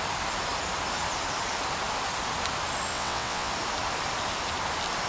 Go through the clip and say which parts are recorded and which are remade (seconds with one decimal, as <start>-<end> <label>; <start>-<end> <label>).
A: 0.0-2.9 recorded; 2.9-3.5 remade; 3.5-5.1 recorded